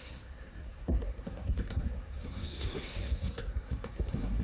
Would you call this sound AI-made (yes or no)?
yes